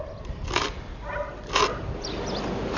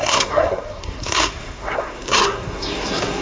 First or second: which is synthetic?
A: second